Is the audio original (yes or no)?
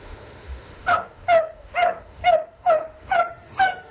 no